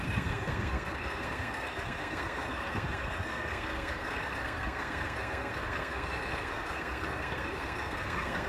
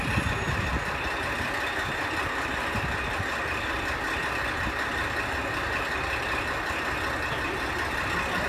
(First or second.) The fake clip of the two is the first